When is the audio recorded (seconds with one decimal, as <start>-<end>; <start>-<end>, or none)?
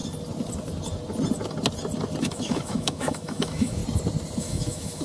0.0-2.2; 3.8-4.4